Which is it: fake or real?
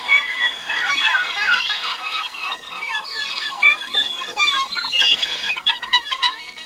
fake